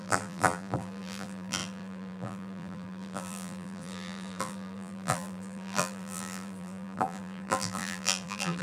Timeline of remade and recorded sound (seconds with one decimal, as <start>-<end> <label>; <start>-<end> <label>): 0.0-8.6 remade